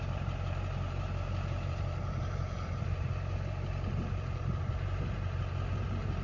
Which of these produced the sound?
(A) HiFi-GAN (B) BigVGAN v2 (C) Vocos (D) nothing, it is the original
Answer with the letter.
B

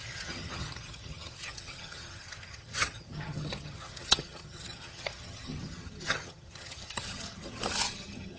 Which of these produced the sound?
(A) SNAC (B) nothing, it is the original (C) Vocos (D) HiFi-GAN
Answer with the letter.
D